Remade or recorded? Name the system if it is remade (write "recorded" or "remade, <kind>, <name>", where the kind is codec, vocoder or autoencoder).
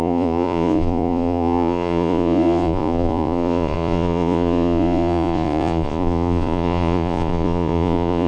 remade, vocoder, Vocos